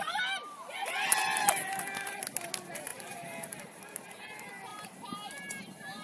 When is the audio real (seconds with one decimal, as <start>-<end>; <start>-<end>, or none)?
0.0-2.9; 3.8-4.7; 5.5-6.0